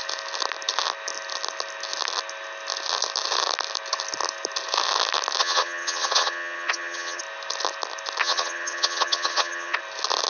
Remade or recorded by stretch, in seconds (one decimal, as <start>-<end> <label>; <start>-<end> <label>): 0.0-5.4 recorded; 5.4-7.2 remade; 7.2-8.2 recorded; 8.2-9.8 remade; 9.8-10.3 recorded

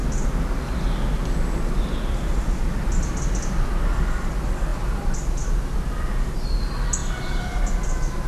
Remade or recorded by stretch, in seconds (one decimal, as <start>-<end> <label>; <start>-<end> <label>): 0.0-8.3 recorded

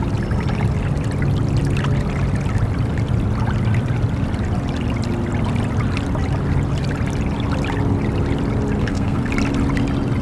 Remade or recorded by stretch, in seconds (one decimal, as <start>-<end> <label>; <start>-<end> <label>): 0.0-8.8 recorded; 8.8-9.3 remade; 9.3-10.2 recorded

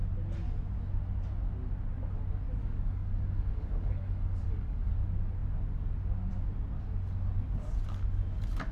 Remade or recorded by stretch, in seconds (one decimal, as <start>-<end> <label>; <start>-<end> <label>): 0.0-2.6 recorded; 2.6-4.9 remade; 4.9-8.7 recorded

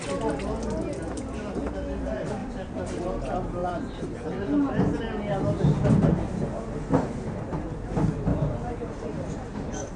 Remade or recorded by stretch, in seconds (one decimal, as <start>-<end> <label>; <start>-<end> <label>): 0.0-2.4 recorded; 2.4-3.0 remade; 3.0-3.6 recorded; 3.6-4.3 remade; 4.3-8.3 recorded; 8.3-10.0 remade

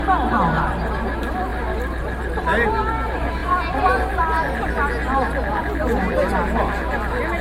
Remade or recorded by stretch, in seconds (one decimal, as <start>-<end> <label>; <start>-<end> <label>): 0.0-7.4 recorded

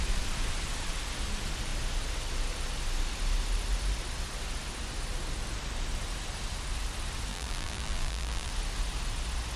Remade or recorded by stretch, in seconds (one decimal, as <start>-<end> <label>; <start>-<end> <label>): 0.0-7.3 recorded; 7.3-8.5 remade; 8.5-9.6 recorded